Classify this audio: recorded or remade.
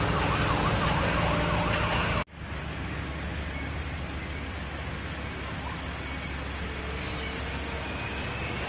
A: recorded